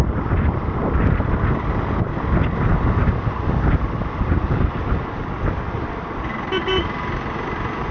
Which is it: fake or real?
real